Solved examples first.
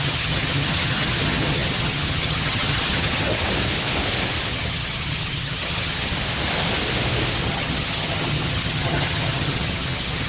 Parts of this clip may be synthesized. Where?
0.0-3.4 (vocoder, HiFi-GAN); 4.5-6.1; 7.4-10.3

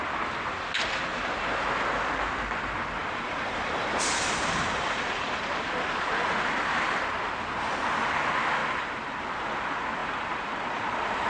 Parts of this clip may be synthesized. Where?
3.0-5.4 (vocoder, BigVGAN v2); 8.6-9.2; 10.0-11.3

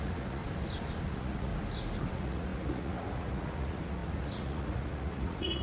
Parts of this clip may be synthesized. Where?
0.0-0.4 (vocoder, Vocos); 1.1-1.5; 2.1-5.6

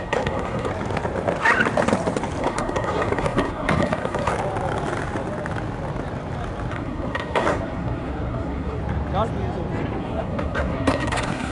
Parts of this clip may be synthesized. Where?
0.0-0.7 (codec, SNAC); 2.4-4.3; 6.7-8.8; 10.0-11.5

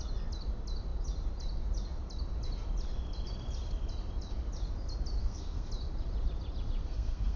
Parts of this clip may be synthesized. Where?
5.2-5.7 (codec, SNAC); 6.8-7.4

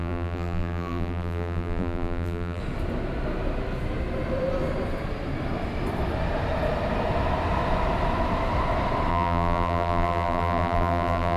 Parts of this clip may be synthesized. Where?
0.0-2.6 (vocoder, BigVGAN v2); 9.1-11.4

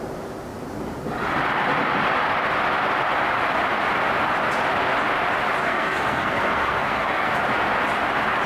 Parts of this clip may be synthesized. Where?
5.6-7.3 (codec, SNAC)

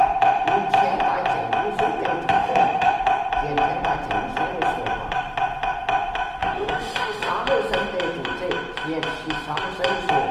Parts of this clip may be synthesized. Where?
2.3-2.9 (autoencoder, DAC-VAE); 6.4-7.3